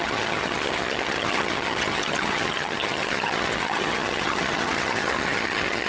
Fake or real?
fake